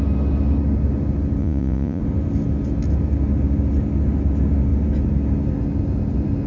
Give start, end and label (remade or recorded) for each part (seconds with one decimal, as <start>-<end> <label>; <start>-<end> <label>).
0.0-1.4 recorded; 1.4-2.0 remade; 2.0-6.5 recorded